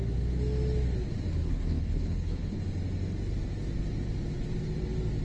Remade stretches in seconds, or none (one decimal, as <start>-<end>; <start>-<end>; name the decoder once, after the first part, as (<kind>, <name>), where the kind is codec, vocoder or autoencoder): 1.4-2.6 (codec, HILCodec)